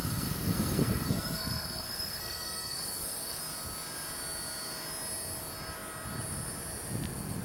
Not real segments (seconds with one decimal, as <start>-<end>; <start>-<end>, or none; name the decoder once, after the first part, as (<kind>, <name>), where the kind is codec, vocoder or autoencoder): 0.0-3.4 (codec, SNAC)